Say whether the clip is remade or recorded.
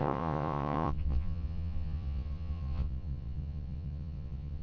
remade